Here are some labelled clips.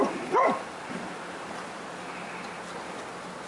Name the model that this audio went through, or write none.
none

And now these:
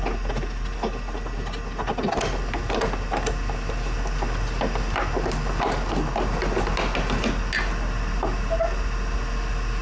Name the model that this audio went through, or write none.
none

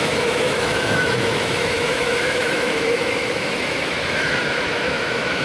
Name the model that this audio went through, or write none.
autoencoder, DAC-VAE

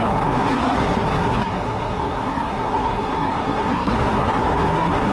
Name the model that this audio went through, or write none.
codec, SNAC